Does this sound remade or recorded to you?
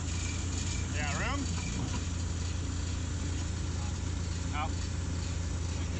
recorded